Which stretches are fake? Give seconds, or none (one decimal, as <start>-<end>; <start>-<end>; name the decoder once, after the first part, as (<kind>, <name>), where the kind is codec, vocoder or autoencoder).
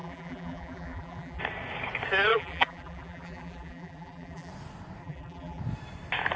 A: 0.0-1.4 (vocoder, BigVGAN v2); 2.3-4.5; 5.0-5.6